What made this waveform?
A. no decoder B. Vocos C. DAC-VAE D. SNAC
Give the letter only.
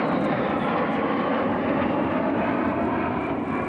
A